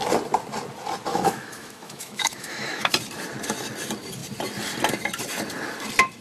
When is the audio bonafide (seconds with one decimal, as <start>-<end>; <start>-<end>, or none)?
0.0-1.1; 2.9-6.2